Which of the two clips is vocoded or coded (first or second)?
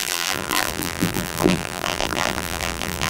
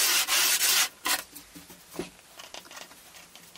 first